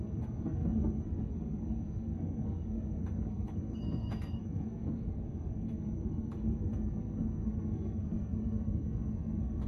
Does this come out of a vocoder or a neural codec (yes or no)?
yes